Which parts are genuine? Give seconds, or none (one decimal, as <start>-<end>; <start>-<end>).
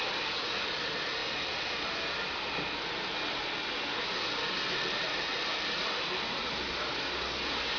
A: 0.0-7.8